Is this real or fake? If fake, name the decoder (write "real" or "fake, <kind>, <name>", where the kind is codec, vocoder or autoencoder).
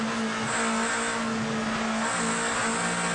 real